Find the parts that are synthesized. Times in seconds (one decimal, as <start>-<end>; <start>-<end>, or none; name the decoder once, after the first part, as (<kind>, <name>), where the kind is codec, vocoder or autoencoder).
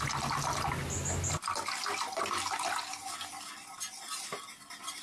none